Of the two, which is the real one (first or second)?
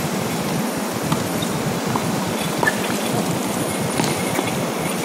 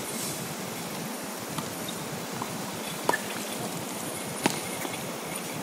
first